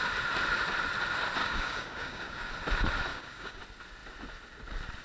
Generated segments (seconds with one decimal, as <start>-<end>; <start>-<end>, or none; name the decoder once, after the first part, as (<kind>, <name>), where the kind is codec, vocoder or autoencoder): 1.4-2.5 (codec, DAC); 3.1-3.6